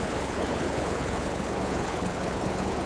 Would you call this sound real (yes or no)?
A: no